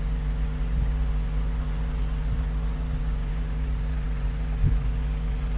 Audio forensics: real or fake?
fake